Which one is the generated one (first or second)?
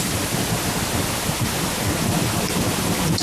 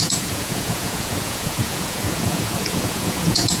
second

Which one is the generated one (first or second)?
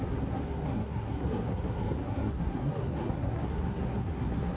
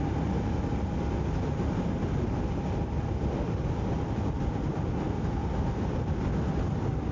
first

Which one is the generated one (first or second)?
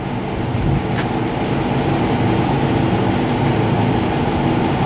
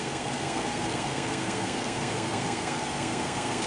second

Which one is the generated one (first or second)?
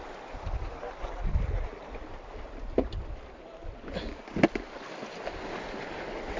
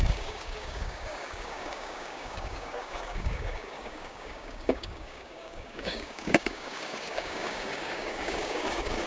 second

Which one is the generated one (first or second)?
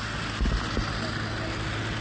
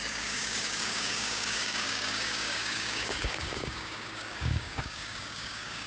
second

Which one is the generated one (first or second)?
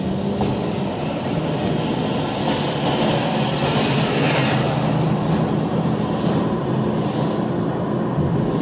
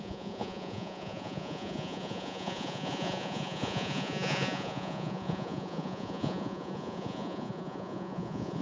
second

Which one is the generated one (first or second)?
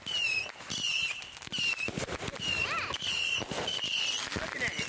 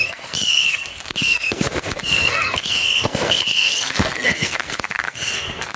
second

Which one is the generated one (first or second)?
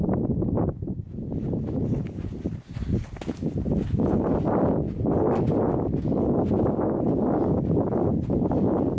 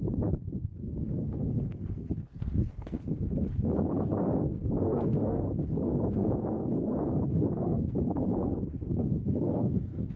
second